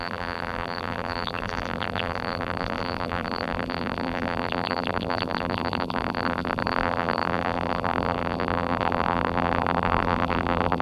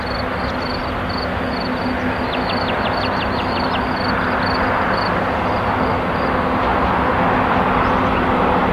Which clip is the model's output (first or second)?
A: first